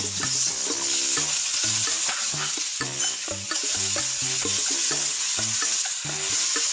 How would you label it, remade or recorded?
recorded